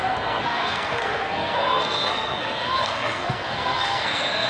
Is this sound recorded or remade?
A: remade